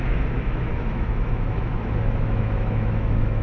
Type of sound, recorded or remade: remade